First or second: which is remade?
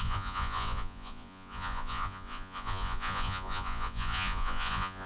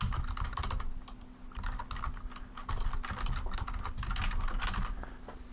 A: first